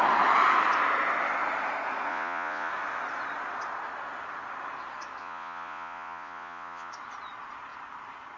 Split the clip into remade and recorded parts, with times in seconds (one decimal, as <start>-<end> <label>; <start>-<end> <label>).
0.0-2.1 recorded; 2.1-2.7 remade; 2.7-5.2 recorded; 5.2-6.9 remade; 6.9-8.4 recorded